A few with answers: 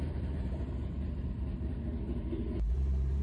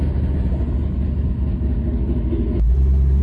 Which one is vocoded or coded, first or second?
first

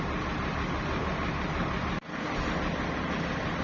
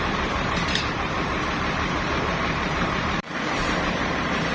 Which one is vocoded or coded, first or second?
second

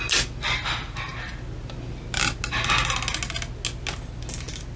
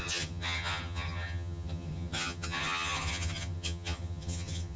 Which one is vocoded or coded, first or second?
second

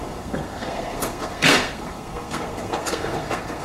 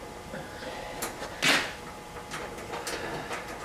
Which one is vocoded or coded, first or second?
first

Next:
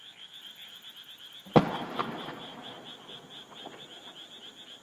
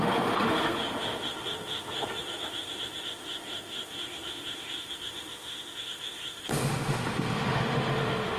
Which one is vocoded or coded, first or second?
second